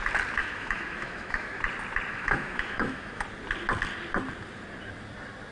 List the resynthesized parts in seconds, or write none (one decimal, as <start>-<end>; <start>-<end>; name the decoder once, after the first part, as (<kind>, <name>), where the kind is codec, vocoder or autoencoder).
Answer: 0.4-1.6 (autoencoder, DAC-VAE); 2.1-3.2